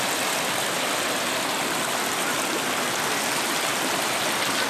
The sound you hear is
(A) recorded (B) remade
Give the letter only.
A